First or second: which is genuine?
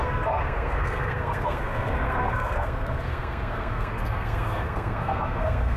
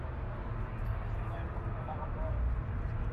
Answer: second